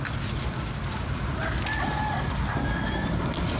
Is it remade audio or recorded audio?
recorded